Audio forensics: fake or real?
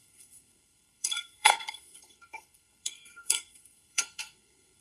fake